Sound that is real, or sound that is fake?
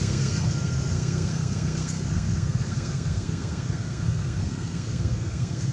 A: fake